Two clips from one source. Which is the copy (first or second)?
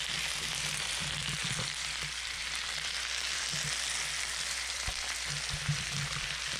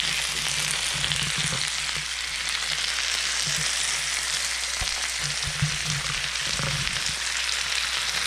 first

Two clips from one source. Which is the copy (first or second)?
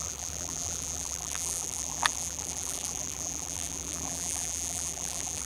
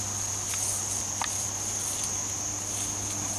first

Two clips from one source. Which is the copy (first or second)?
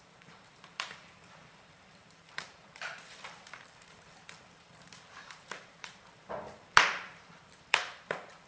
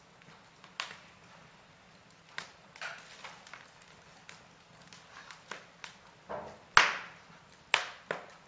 first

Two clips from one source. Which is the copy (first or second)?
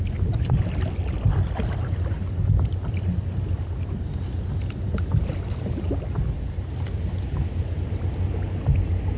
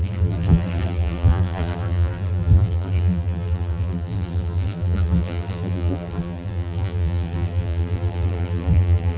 second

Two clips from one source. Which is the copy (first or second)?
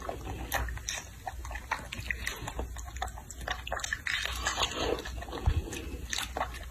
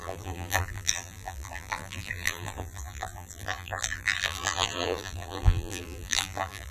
second